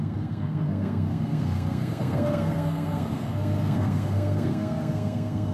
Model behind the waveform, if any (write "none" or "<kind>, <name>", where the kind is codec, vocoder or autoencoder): codec, SNAC